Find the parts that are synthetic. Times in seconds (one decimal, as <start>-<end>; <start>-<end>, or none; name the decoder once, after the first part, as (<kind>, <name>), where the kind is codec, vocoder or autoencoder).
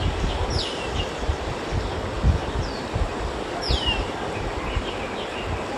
2.4-3.3 (vocoder, BigVGAN v2)